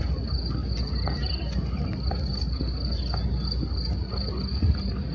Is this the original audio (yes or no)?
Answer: yes